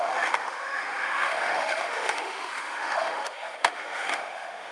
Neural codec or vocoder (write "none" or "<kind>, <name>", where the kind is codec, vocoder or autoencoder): autoencoder, DAC-VAE